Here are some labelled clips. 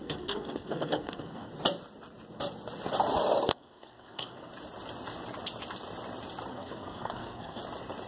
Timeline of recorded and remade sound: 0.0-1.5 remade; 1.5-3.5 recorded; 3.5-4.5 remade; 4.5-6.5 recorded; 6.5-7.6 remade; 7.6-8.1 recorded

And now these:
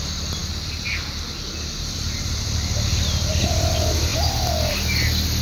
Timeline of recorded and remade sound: 0.0-5.4 recorded

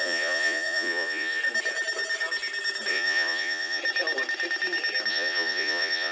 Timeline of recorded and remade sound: 0.0-1.4 remade; 1.4-2.9 recorded; 2.9-3.8 remade; 3.8-5.1 recorded; 5.1-6.1 remade

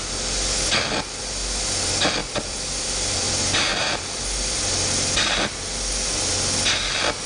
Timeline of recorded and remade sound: 0.0-2.2 recorded; 2.2-3.3 remade; 3.3-3.7 recorded; 3.7-4.6 remade; 4.6-7.3 recorded

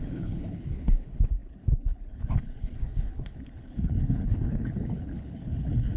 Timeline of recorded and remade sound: 0.0-6.0 remade

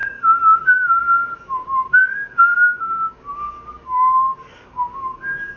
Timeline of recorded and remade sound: 0.0-5.6 remade

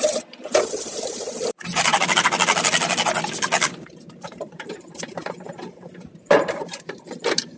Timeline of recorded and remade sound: 0.0-1.9 remade; 1.9-4.4 recorded; 4.4-7.6 remade